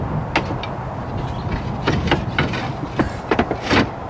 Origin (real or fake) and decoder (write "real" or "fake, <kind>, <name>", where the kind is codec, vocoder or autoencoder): real